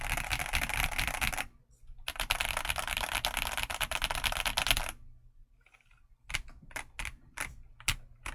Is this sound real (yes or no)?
yes